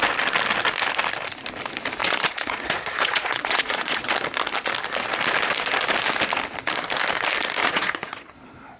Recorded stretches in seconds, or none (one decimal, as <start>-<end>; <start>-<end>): 0.0-2.0; 4.1-7.6; 8.4-8.8